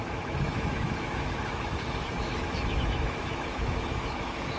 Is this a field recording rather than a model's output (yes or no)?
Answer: no